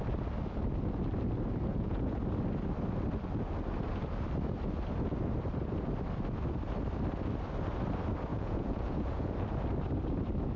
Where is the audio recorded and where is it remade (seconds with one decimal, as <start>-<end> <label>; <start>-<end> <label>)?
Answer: 0.0-1.7 recorded; 1.7-2.2 remade; 2.2-8.3 recorded; 8.3-9.3 remade; 9.3-10.6 recorded

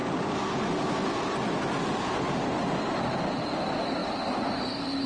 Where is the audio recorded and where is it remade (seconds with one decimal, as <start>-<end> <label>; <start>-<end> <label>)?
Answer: 0.0-5.1 recorded

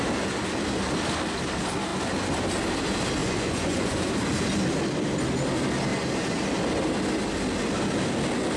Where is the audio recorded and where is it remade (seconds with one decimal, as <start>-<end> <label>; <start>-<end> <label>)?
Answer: 0.0-3.2 recorded; 3.2-4.1 remade; 4.1-8.6 recorded

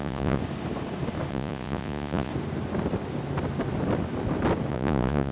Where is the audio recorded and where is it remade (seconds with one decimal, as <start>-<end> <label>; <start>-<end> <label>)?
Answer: 0.0-0.4 remade; 0.4-1.3 recorded; 1.3-2.3 remade; 2.3-4.7 recorded; 4.7-5.3 remade

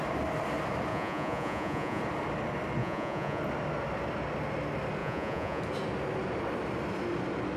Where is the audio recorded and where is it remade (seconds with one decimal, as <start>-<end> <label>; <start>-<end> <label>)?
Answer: 0.0-0.9 recorded; 0.9-2.0 remade; 2.0-2.8 recorded; 2.8-3.4 remade; 3.4-5.0 recorded; 5.0-5.6 remade; 5.6-7.6 recorded

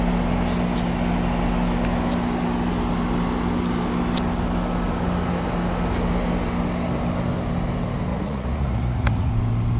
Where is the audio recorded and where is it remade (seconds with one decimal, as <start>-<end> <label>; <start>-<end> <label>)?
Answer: 0.0-8.1 recorded; 8.1-9.3 remade; 9.3-9.8 recorded

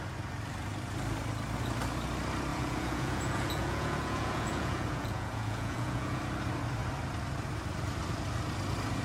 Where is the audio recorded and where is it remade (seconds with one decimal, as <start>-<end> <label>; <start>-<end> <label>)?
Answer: 0.0-2.5 recorded; 2.5-6.2 remade; 6.2-9.0 recorded

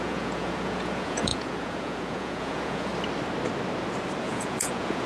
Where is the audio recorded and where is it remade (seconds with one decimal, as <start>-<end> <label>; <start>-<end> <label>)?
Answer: 0.0-2.9 remade; 2.9-4.2 recorded; 4.2-5.1 remade